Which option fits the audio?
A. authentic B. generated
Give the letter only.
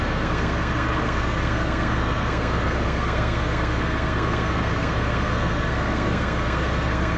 B